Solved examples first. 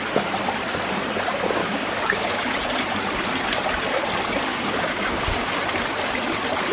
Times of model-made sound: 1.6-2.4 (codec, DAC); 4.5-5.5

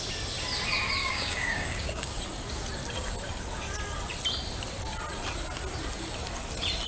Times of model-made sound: 1.0-2.2 (codec, DAC)

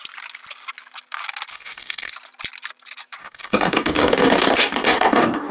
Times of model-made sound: 1.5-2.1 (codec, DAC); 3.2-5.5

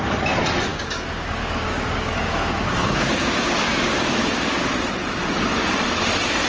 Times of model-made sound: 0.7-4.6 (codec, DAC)